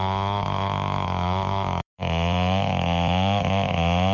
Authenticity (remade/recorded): remade